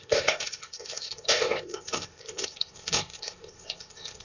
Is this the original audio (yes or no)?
no